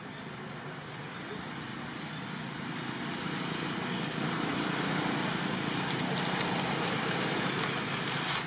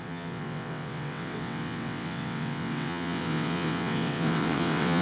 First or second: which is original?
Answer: first